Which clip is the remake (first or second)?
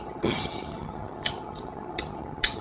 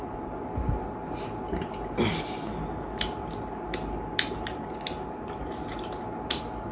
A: first